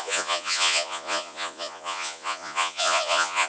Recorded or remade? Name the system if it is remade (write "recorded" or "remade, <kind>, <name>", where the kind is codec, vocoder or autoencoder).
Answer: remade, vocoder, Vocos